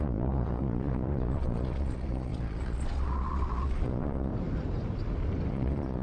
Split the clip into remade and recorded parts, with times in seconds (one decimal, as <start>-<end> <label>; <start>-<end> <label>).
0.0-4.3 remade; 4.3-5.5 recorded; 5.5-6.0 remade